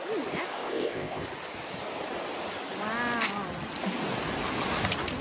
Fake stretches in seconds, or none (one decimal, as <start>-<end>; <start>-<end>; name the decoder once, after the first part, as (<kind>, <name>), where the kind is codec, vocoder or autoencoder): 0.5-1.2 (codec, ZipCodec)